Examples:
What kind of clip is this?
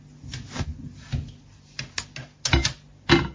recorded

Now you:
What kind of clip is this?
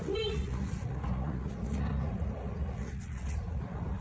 remade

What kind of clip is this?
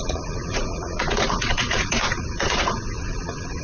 remade